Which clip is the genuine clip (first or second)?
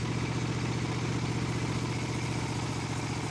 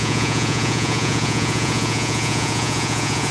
first